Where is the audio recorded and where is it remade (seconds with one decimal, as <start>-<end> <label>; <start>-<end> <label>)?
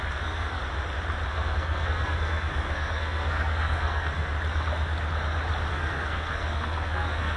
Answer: 0.0-0.6 remade; 0.6-1.3 recorded; 1.3-4.3 remade; 4.3-5.7 recorded; 5.7-7.4 remade